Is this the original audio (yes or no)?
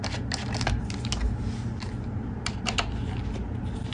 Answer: yes